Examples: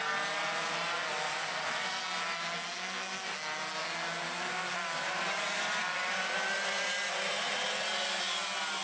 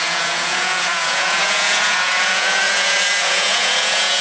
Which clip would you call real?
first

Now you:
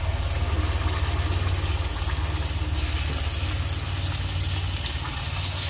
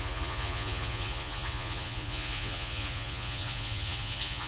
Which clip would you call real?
first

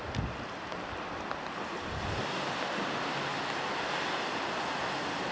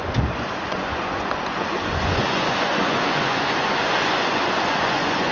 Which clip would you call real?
first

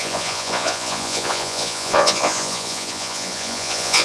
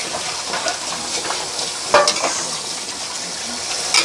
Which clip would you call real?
second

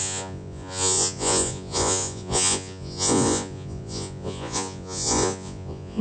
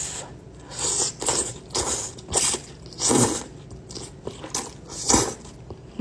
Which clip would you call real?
second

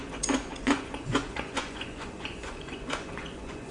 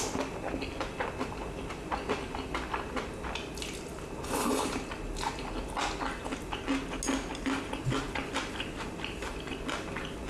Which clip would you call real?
second